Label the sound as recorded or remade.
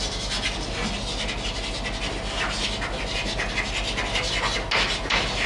recorded